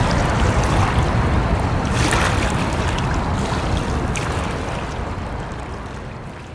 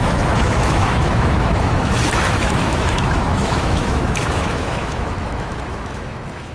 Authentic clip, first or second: first